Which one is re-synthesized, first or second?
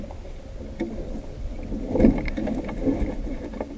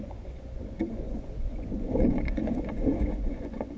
second